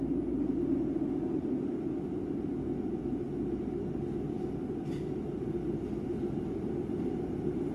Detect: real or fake real